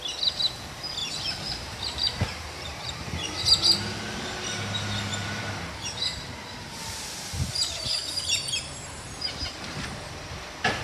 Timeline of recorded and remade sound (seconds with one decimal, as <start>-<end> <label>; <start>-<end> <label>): 0.0-1.0 recorded; 1.0-3.4 remade; 3.4-5.1 recorded; 5.1-10.2 remade; 10.2-10.8 recorded